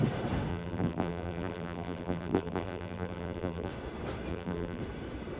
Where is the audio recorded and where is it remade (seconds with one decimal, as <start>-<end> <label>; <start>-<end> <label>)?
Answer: 0.0-0.5 recorded; 0.5-3.7 remade; 3.7-4.3 recorded; 4.3-4.8 remade; 4.8-5.4 recorded